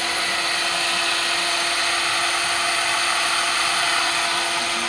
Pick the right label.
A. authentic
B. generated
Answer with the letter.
A